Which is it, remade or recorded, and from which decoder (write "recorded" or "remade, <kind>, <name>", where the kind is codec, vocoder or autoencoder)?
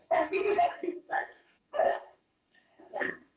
remade, codec, SNAC